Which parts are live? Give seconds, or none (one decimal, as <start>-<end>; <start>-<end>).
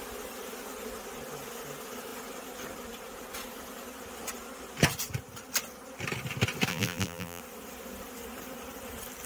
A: 0.0-6.7; 7.4-9.3